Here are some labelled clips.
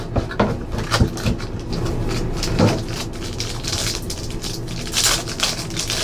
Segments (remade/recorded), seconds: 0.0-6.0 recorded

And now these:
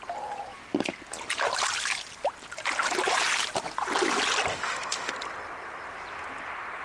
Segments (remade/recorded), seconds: 0.0-4.5 recorded; 4.5-5.1 remade; 5.1-6.8 recorded

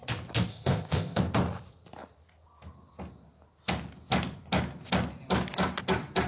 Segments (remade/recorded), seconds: 0.0-0.5 recorded; 0.5-1.2 remade; 1.2-6.3 recorded